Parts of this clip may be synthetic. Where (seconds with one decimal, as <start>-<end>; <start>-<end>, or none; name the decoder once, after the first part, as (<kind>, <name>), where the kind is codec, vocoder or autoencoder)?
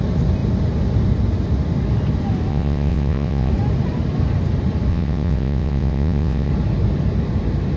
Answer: 2.5-3.5 (vocoder, WaveNeXt); 4.9-6.5